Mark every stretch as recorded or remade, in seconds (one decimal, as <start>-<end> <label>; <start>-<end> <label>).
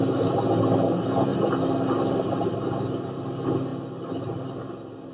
0.0-5.1 recorded